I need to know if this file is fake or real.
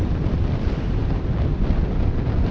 real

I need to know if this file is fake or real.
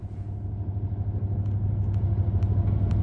real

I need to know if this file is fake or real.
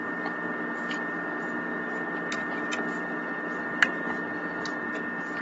real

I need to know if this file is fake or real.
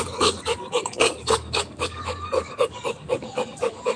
fake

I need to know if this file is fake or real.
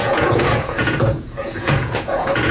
fake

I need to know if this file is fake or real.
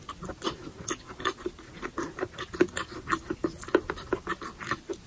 real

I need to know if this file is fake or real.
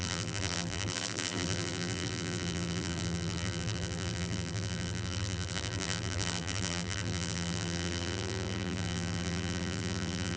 fake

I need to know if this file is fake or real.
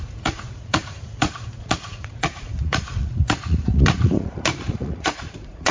fake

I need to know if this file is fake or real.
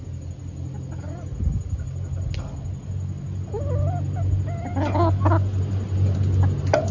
real